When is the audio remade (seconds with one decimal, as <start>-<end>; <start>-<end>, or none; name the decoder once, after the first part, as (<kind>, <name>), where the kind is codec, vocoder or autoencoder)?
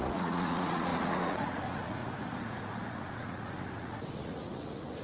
0.0-5.0 (vocoder, Vocos)